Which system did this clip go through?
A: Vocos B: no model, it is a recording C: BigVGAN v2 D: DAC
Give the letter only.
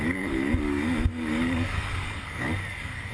D